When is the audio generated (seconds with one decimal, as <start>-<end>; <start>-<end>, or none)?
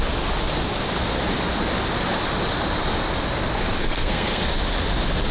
3.8-4.4